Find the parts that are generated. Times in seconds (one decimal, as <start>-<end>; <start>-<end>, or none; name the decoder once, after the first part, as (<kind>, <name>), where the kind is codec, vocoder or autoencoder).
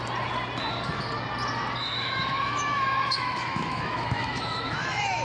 1.8-5.2 (autoencoder, DAC-VAE)